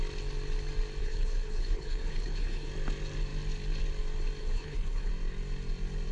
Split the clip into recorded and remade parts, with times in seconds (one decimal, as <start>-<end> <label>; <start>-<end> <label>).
0.0-1.0 recorded; 1.0-2.7 remade; 2.7-4.4 recorded; 4.4-5.1 remade; 5.1-6.1 recorded